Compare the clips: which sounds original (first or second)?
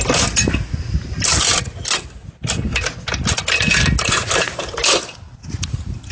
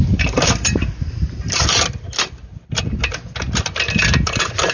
first